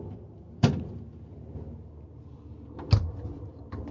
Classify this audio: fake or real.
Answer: real